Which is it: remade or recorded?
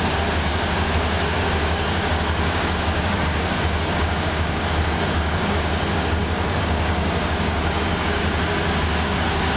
remade